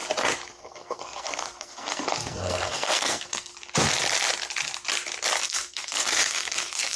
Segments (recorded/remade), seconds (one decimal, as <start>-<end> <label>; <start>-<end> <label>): 0.0-0.6 recorded; 0.6-3.5 remade; 3.5-5.4 recorded; 5.4-7.0 remade